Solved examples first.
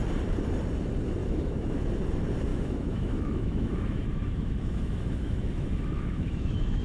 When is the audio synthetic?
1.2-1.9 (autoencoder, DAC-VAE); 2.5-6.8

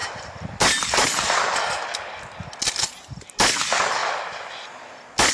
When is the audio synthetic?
none

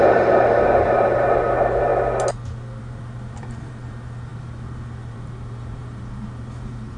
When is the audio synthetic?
0.0-1.9 (vocoder, BigVGAN v2); 2.8-7.0

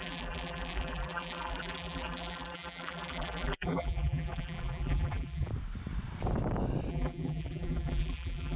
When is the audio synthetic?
0.0-5.5 (vocoder, BigVGAN v2); 6.9-8.6

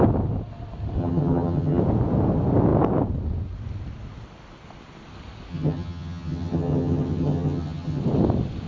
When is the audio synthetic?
1.0-1.8 (vocoder, HiFi-GAN); 5.5-8.0

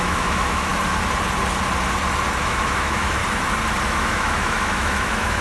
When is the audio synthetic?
0.0-0.7 (autoencoder, DAC-VAE); 2.4-3.2; 3.8-5.4